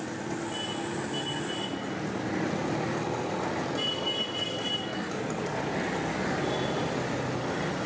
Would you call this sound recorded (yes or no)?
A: yes